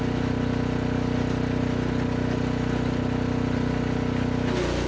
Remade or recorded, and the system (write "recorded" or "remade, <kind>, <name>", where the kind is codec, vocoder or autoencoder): recorded